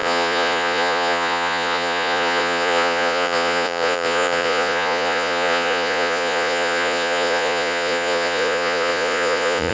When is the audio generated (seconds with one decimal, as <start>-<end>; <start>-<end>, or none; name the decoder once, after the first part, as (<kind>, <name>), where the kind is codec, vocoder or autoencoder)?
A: 0.0-9.7 (vocoder, Vocos)